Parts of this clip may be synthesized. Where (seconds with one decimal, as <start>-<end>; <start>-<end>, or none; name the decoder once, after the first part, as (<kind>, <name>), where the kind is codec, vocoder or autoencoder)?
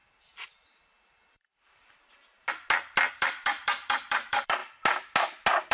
3.1-4.6 (vocoder, BigVGAN v2)